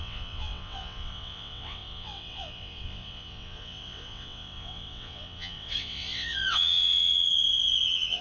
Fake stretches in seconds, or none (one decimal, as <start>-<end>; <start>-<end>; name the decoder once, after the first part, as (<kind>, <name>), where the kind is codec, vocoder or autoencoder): 0.0-8.2 (vocoder, WaveNeXt)